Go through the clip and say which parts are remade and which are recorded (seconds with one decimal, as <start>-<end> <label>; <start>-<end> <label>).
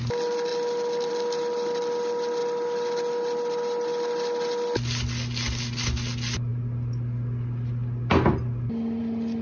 0.0-9.4 recorded